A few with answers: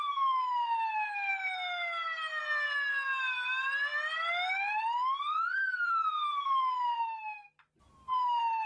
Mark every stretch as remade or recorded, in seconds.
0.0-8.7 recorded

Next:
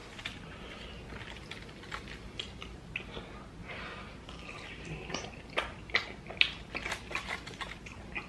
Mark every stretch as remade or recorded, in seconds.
0.0-3.6 recorded; 3.6-6.2 remade; 6.2-8.3 recorded

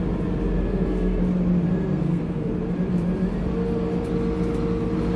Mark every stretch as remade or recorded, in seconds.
0.0-0.7 recorded; 0.7-1.2 remade; 1.2-1.7 recorded; 1.7-2.5 remade; 2.5-5.2 recorded

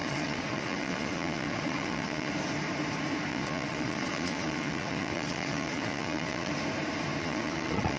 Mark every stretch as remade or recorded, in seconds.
0.0-2.3 remade; 2.3-3.3 recorded; 3.3-6.5 remade; 6.5-7.2 recorded; 7.2-8.0 remade